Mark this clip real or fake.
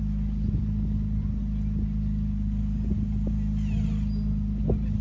real